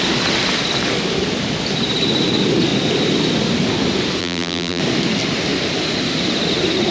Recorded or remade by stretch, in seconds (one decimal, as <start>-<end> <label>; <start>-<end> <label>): 0.0-4.2 recorded; 4.2-4.8 remade; 4.8-6.9 recorded